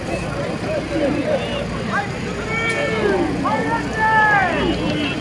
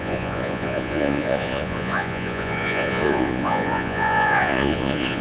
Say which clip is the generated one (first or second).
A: second